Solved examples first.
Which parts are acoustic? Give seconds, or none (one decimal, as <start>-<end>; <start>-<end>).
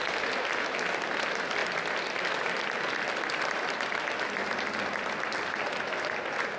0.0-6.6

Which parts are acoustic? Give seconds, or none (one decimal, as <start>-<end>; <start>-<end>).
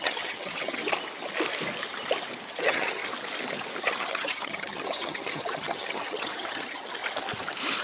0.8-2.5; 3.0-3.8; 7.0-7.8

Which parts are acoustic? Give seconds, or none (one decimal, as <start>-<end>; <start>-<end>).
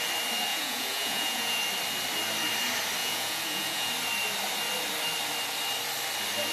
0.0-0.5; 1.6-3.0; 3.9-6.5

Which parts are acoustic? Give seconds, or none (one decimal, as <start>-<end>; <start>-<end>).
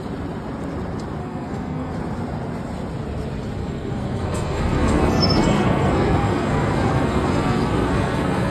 0.0-1.2; 1.9-3.6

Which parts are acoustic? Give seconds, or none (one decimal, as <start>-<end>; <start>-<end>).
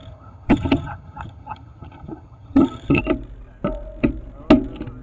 3.0-5.0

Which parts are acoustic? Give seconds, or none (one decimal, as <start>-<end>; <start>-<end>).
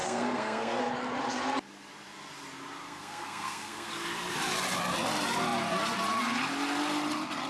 0.8-2.8; 3.9-7.5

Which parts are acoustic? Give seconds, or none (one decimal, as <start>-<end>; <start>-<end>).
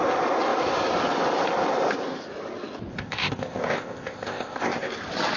0.0-2.9; 4.9-5.4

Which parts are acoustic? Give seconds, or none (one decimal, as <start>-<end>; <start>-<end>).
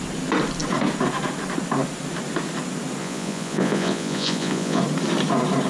0.0-3.0; 4.8-5.7